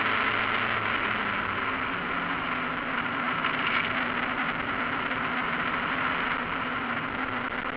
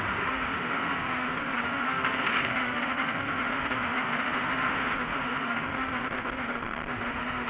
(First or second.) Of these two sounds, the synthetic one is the second